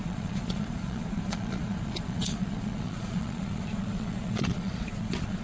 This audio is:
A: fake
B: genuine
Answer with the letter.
A